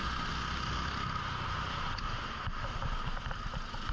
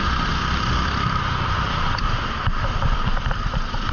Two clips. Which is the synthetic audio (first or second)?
second